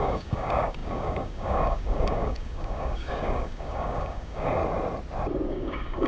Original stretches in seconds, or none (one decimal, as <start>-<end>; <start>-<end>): 4.6-5.5